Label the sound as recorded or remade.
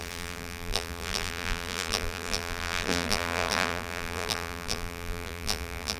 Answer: remade